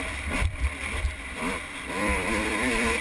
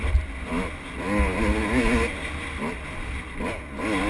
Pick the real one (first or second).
second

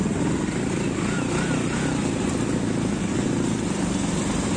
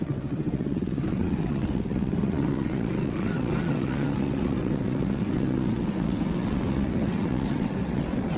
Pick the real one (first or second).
first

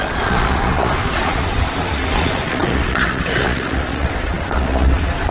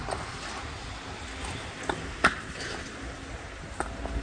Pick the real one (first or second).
second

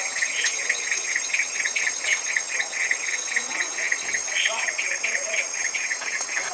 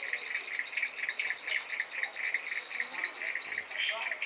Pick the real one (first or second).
second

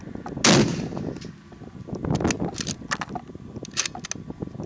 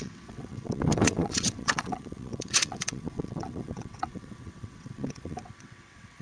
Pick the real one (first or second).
first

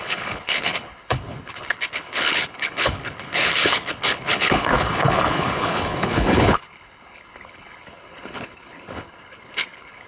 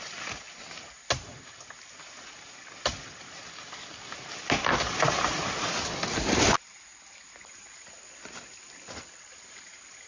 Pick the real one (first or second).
second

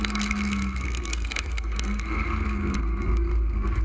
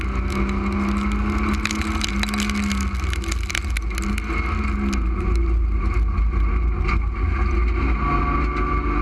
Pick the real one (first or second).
second